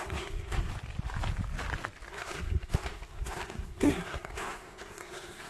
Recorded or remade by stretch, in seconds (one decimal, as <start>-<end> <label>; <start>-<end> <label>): 0.0-0.7 remade; 0.7-2.1 recorded; 2.1-5.5 remade